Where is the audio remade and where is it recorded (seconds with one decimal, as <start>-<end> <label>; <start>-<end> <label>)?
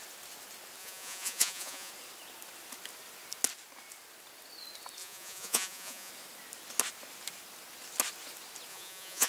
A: 0.0-0.8 recorded; 0.8-1.9 remade; 1.9-5.0 recorded; 5.0-6.1 remade; 6.1-8.7 recorded; 8.7-9.3 remade